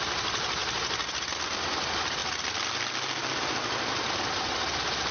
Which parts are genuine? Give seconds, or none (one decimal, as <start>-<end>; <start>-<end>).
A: 0.0-5.1